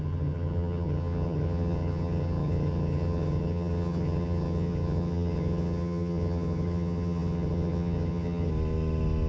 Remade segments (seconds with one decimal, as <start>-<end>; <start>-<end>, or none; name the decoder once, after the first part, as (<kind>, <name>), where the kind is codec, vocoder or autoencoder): 0.0-8.5 (vocoder, HiFi-GAN)